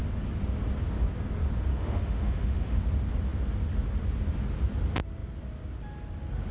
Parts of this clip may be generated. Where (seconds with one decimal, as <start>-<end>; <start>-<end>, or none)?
1.7-2.8